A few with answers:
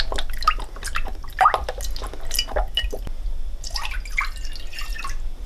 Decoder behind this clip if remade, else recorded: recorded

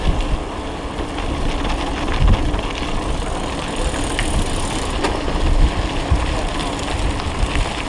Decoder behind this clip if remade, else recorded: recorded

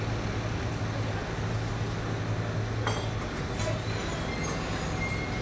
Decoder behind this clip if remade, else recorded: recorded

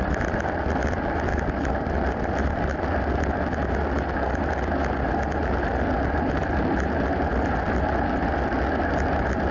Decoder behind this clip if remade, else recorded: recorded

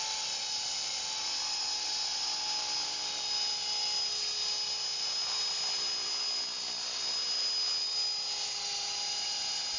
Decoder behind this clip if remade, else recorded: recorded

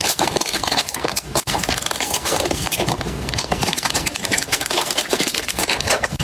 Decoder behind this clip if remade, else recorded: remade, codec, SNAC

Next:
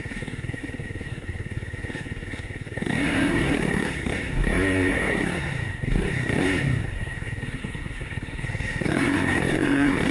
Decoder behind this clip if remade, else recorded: remade, codec, SNAC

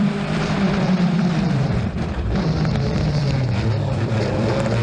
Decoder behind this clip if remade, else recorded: remade, vocoder, BigVGAN v2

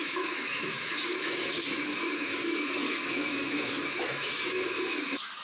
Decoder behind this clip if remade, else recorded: remade, autoencoder, DAC-VAE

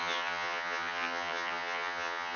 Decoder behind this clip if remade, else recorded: remade, vocoder, HiFi-GAN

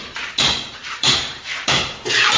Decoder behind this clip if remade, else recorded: remade, vocoder, BigVGAN v2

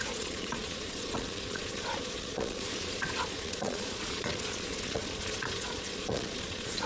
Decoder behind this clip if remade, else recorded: remade, vocoder, Vocos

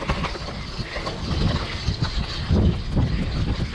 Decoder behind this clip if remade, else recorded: recorded